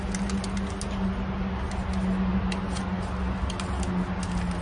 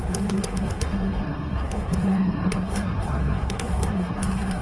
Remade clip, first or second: second